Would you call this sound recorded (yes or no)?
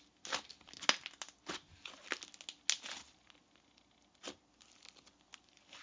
yes